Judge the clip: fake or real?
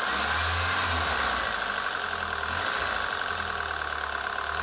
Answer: real